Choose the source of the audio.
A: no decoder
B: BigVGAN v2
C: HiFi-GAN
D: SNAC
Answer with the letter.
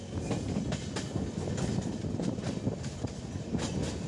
A